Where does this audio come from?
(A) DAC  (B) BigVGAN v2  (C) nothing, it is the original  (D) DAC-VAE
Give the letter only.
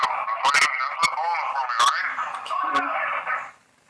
C